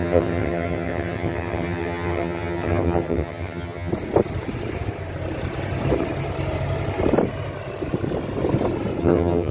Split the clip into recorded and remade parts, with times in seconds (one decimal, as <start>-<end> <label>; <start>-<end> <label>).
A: 0.0-3.9 remade; 3.9-9.0 recorded; 9.0-9.5 remade